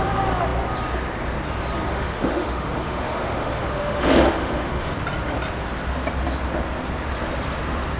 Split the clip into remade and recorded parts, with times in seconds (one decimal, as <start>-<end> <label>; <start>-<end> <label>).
0.0-1.9 recorded; 1.9-4.9 remade; 4.9-8.0 recorded